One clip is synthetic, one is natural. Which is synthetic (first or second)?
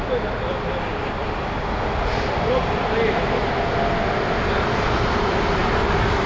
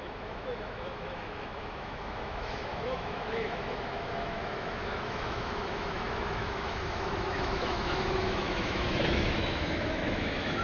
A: second